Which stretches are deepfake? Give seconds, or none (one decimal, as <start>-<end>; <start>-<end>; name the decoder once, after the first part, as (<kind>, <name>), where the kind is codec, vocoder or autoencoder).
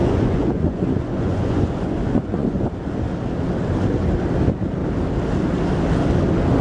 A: 0.0-2.7 (vocoder, Vocos)